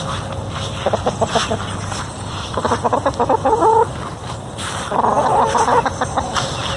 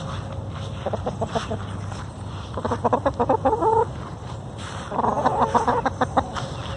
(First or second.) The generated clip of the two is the second